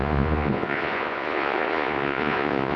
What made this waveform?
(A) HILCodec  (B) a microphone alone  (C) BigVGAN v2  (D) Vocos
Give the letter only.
D